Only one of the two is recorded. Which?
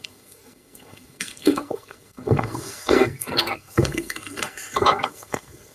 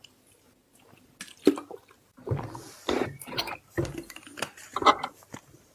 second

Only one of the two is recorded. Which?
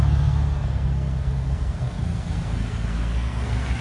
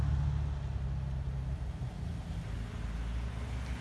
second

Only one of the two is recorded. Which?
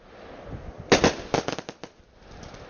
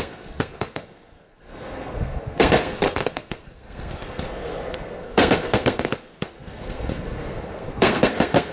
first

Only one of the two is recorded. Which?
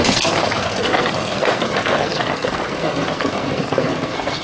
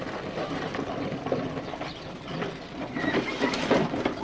second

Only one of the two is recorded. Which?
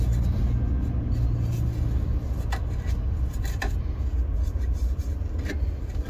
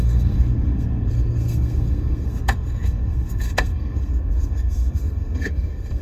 first